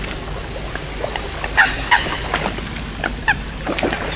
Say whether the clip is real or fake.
real